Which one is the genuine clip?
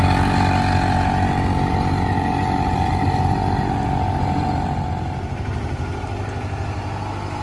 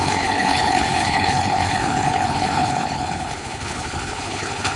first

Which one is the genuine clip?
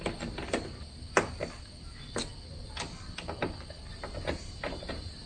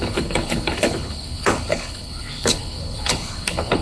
first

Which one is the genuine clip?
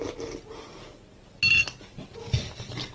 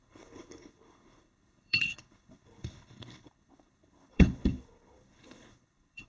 first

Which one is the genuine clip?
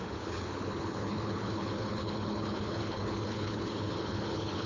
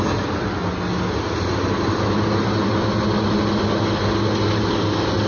second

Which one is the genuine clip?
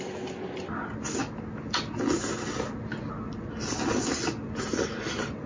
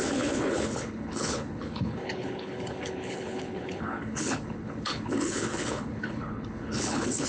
first